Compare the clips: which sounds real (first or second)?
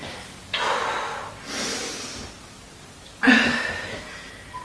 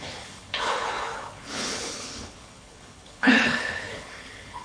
first